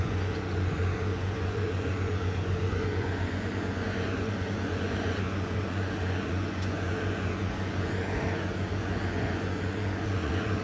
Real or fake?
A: fake